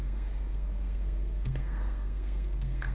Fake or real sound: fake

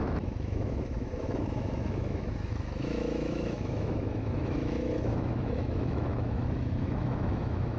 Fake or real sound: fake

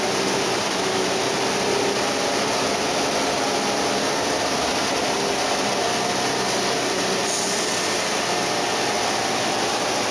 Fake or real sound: real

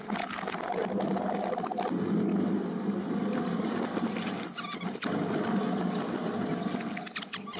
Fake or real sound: real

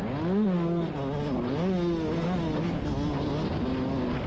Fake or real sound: real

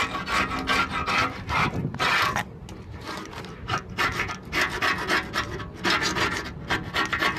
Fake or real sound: real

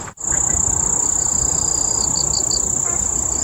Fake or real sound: real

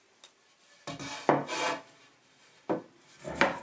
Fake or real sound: real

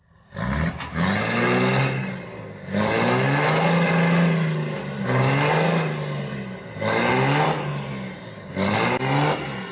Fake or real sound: real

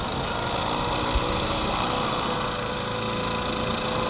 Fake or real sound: real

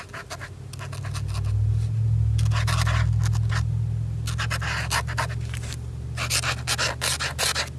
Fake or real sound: real